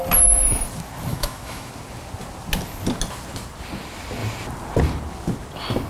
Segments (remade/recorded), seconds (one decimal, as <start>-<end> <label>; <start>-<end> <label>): 0.0-1.1 recorded; 1.1-1.7 remade; 1.7-5.9 recorded